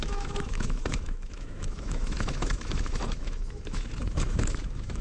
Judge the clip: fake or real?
fake